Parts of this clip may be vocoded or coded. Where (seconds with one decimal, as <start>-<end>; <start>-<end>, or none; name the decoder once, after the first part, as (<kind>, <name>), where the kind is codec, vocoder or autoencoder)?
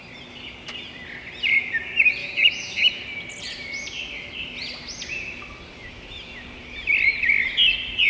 2.2-3.0 (autoencoder, DAC-VAE)